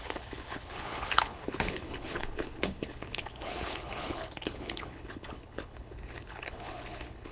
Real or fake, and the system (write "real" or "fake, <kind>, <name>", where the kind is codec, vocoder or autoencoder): fake, codec, HILCodec